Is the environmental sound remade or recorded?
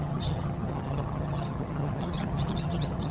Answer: remade